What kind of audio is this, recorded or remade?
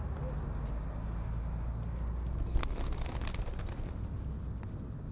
recorded